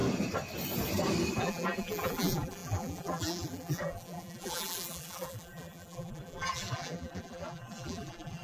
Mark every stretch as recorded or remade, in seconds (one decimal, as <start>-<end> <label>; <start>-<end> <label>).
0.0-1.4 recorded; 1.4-8.4 remade